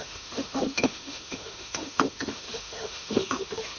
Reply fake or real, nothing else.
fake